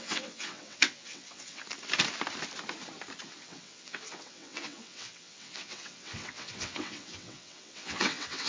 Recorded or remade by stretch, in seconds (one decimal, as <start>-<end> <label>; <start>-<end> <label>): 0.0-1.6 remade; 1.6-3.3 recorded; 3.3-8.5 remade